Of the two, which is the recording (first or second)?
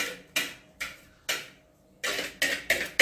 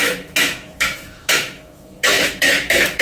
first